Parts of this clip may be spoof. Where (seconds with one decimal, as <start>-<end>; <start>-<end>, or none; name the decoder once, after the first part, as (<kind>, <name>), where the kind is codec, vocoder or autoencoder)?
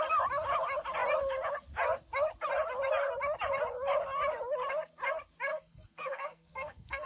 5.5-7.1 (codec, SNAC)